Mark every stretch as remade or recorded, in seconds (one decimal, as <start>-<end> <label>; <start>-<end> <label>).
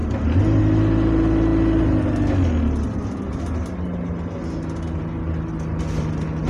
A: 0.0-6.5 recorded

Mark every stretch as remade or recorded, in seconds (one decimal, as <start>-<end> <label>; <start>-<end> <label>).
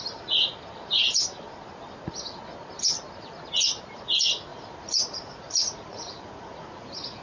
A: 0.0-4.5 recorded; 4.5-7.2 remade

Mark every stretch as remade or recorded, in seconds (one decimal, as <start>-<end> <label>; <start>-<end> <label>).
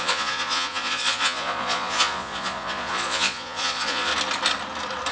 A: 0.0-4.1 remade; 4.1-5.1 recorded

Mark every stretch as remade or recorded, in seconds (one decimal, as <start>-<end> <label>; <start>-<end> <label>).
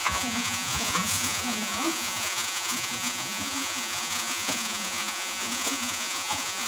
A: 0.0-6.7 remade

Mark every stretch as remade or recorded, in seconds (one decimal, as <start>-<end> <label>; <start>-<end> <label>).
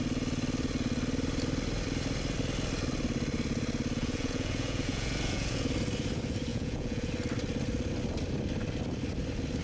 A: 0.0-4.0 recorded; 4.0-5.6 remade; 5.6-6.5 recorded; 6.5-7.1 remade; 7.1-9.6 recorded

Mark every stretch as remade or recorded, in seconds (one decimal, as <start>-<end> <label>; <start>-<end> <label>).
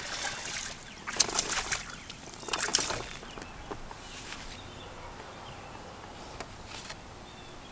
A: 0.0-7.7 recorded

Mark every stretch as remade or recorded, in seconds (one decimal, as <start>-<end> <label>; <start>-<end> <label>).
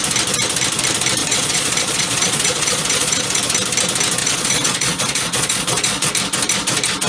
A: 0.0-1.2 recorded; 1.2-3.4 remade; 3.4-4.2 recorded; 4.2-6.1 remade; 6.1-7.1 recorded